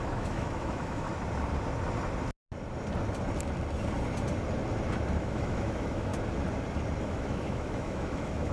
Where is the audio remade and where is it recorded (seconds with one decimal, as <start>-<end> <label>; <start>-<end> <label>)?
0.0-1.1 remade; 1.1-5.2 recorded; 5.2-6.1 remade; 6.1-7.0 recorded; 7.0-8.5 remade